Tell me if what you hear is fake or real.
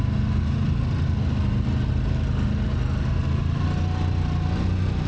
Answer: real